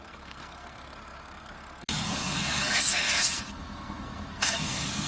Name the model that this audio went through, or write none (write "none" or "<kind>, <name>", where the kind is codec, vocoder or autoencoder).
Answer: codec, SNAC